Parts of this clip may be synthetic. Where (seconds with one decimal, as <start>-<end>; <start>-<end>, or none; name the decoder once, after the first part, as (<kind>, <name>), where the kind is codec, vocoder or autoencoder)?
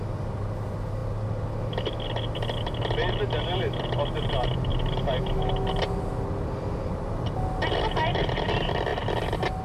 none